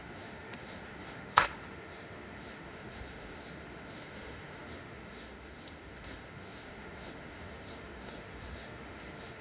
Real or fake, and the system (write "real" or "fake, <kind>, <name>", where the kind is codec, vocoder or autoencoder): fake, autoencoder, DAC-VAE